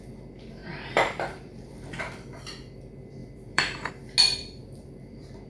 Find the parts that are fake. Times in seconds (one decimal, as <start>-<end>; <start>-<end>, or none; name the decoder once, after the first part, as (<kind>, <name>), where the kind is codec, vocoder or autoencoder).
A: 0.6-2.0 (vocoder, BigVGAN v2); 3.2-3.9; 4.4-5.5